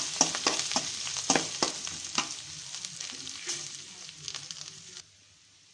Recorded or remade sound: recorded